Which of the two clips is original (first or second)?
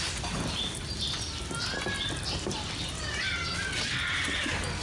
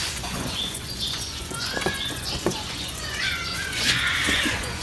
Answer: first